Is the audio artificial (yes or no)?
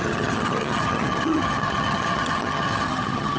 yes